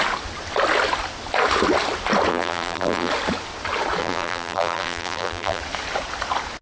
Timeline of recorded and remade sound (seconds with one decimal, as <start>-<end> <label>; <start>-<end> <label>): 0.0-2.3 recorded; 2.3-3.1 remade; 3.1-4.0 recorded; 4.0-5.6 remade; 5.6-6.6 recorded